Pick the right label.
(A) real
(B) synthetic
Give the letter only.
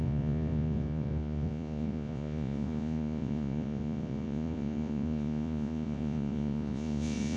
B